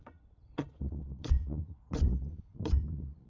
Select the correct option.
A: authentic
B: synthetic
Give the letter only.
B